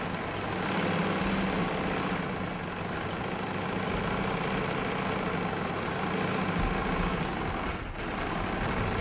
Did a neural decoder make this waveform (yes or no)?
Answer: no